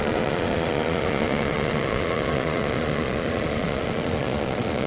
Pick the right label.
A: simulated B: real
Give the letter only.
A